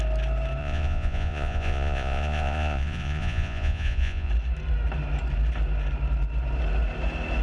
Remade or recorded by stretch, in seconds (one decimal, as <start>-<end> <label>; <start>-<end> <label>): 0.0-0.6 recorded; 0.6-4.3 remade; 4.3-7.4 recorded